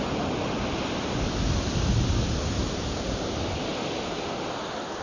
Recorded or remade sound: recorded